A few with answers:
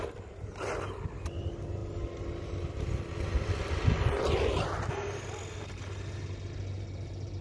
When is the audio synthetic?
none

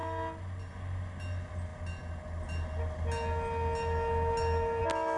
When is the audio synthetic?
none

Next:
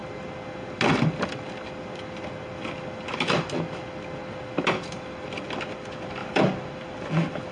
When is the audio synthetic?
none

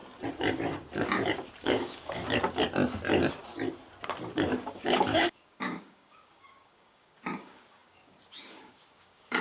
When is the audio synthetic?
1.6-2.2; 4.6-9.4

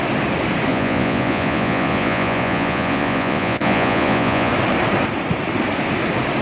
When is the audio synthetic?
0.7-4.5